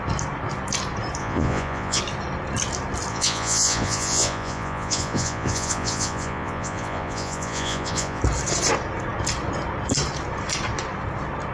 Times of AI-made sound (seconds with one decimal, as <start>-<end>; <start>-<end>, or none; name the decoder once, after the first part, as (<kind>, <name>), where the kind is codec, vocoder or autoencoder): 1.2-2.0 (vocoder, Vocos); 3.1-8.2